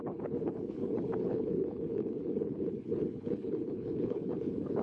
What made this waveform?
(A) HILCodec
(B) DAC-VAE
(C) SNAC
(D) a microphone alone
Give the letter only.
A